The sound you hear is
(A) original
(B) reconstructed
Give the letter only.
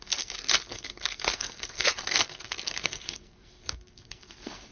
B